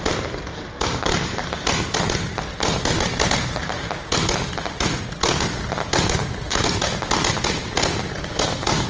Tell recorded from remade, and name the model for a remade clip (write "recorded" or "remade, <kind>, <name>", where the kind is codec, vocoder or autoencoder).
recorded